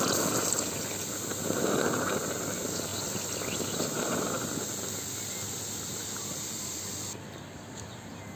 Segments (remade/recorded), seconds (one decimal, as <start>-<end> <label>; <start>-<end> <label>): 0.0-8.4 recorded